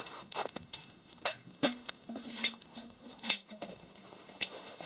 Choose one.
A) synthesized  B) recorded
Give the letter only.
A